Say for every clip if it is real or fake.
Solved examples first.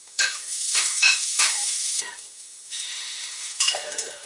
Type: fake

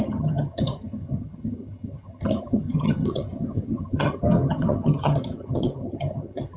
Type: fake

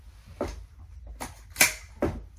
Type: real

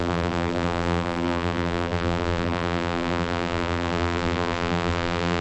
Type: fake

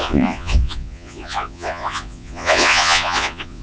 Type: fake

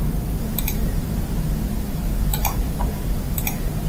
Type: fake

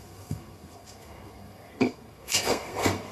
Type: fake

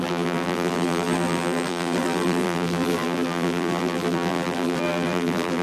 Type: fake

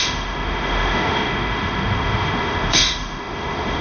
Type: fake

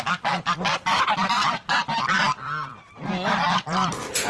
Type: fake